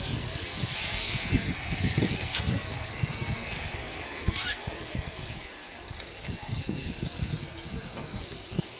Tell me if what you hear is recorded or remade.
remade